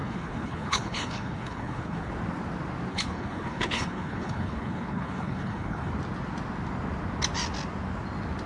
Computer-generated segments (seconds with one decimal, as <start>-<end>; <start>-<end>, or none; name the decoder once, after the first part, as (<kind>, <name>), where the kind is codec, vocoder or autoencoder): 0.0-2.1 (codec, HILCodec); 2.9-5.9